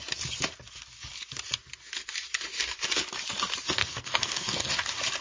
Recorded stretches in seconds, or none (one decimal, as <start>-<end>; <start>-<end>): 0.0-3.8; 4.6-5.2